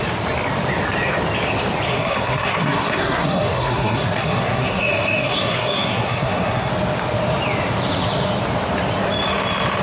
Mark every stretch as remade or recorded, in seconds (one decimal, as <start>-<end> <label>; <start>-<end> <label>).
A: 0.0-1.9 recorded; 1.9-6.7 remade; 6.7-9.8 recorded